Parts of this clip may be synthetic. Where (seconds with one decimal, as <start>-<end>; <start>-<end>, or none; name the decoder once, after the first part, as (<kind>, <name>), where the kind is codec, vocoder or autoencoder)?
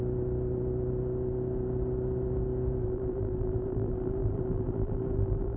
2.8-5.6 (vocoder, BigVGAN v2)